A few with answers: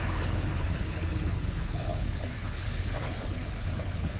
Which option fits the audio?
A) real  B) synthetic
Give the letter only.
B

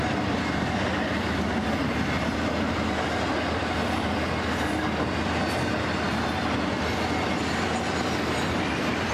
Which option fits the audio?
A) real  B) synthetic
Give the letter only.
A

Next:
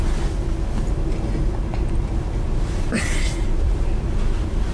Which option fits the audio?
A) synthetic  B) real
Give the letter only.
B